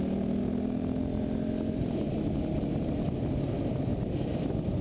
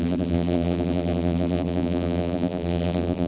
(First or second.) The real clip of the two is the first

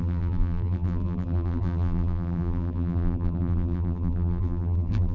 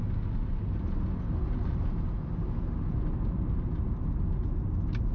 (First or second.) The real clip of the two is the second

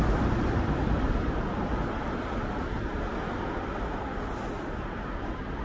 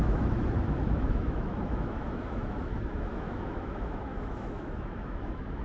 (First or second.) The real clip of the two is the first